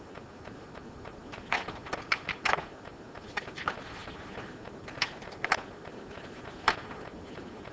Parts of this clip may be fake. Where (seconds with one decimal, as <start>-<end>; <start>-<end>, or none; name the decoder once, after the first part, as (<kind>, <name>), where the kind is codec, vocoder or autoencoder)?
none